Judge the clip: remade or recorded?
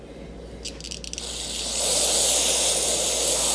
recorded